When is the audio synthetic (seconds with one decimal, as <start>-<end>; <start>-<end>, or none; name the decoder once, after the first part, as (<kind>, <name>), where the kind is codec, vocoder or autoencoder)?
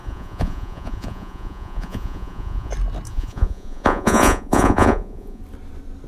0.0-2.7 (vocoder, Vocos); 3.1-5.4